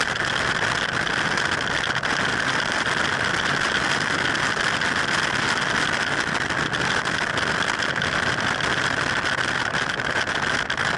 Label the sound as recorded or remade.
recorded